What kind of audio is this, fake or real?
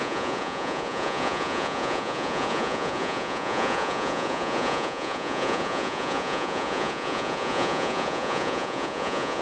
fake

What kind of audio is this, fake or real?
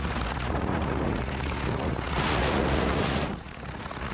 fake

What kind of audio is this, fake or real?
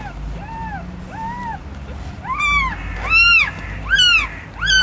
real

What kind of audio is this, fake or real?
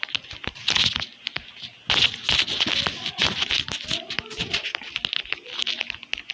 real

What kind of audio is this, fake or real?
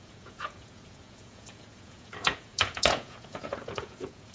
fake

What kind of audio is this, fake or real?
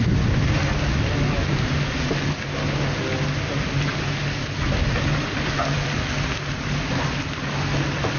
real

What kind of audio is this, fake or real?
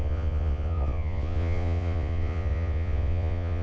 fake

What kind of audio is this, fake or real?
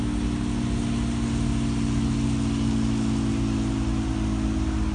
real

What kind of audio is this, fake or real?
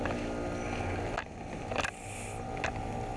real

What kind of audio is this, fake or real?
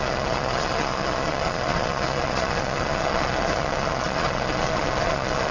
fake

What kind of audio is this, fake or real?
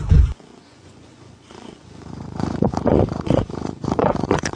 fake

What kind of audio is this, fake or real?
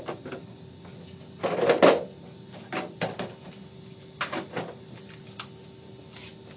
real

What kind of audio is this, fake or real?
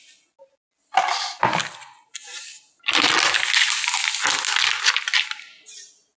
real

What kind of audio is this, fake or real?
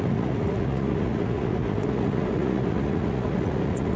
fake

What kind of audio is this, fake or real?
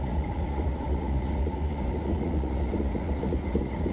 fake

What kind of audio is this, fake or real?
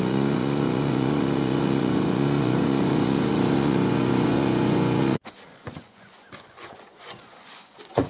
fake